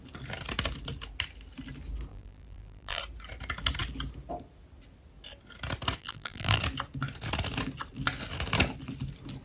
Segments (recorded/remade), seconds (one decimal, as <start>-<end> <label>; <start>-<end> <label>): 0.0-2.1 recorded; 2.1-3.0 remade; 3.0-6.0 recorded; 6.0-6.6 remade; 6.6-9.4 recorded